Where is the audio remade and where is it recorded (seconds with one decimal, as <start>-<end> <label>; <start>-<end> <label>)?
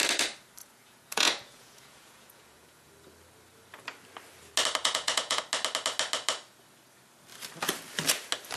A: 0.0-0.6 recorded; 0.6-2.9 remade; 2.9-4.8 recorded; 4.8-5.4 remade; 5.4-8.6 recorded